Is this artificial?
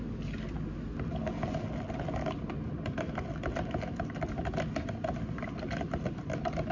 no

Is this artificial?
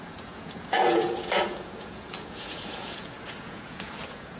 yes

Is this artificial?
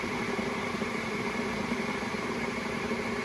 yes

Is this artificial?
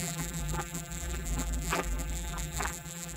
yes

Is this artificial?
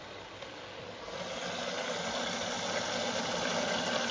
no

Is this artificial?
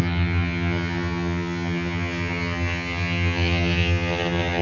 yes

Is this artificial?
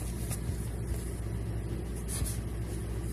no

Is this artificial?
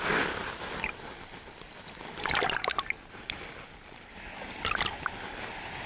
no